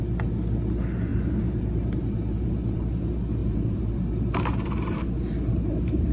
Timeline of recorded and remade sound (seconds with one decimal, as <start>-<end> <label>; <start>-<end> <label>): 0.0-1.1 recorded; 1.1-3.0 remade; 3.0-3.4 recorded; 3.4-6.1 remade